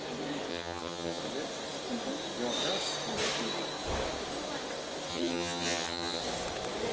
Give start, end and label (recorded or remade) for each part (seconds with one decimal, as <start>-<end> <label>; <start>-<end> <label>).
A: 0.0-0.5 recorded; 0.5-1.2 remade; 1.2-5.1 recorded; 5.1-6.2 remade; 6.2-6.9 recorded